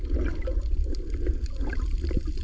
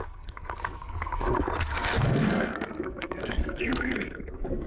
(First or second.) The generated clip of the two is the second